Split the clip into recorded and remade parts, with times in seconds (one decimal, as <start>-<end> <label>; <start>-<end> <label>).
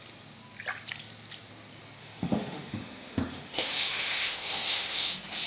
0.0-2.0 recorded; 2.0-5.1 remade; 5.1-5.5 recorded